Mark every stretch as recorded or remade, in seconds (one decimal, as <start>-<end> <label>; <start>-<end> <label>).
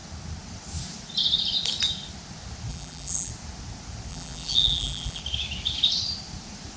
0.0-2.7 recorded; 2.7-3.3 remade; 3.3-4.1 recorded; 4.1-5.2 remade; 5.2-6.8 recorded